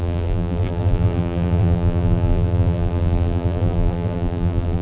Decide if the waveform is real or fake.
fake